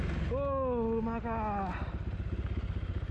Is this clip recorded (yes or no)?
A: yes